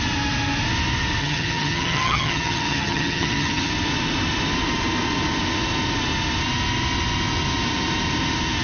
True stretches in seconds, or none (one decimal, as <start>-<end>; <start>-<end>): 0.0-1.2; 3.7-8.6